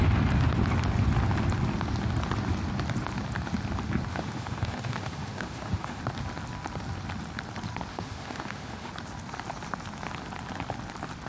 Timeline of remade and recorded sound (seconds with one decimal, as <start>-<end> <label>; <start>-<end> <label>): 0.0-4.1 recorded; 4.1-6.0 remade; 6.0-7.9 recorded; 7.9-8.9 remade; 8.9-11.3 recorded